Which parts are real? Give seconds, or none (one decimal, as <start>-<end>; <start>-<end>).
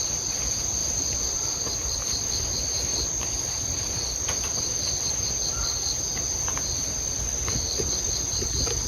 0.0-0.8; 5.3-8.9